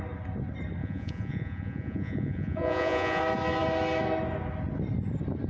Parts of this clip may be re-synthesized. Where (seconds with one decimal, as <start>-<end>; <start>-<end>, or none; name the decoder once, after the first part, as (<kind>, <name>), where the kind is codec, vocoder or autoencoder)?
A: 0.8-3.2 (vocoder, Vocos)